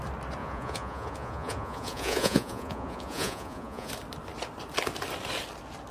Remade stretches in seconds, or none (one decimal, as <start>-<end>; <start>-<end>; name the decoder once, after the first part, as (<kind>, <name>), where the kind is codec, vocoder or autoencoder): 0.4-3.9 (vocoder, Vocos)